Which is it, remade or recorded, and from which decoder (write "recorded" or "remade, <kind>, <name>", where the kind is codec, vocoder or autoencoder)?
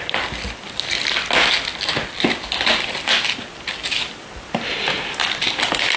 recorded